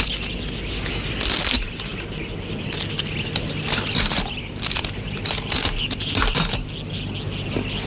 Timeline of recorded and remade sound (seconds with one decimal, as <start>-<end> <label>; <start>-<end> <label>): 0.0-7.9 recorded